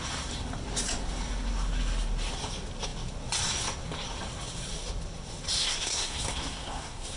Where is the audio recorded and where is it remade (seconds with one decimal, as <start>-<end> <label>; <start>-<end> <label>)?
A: 0.0-5.6 recorded; 5.6-7.2 remade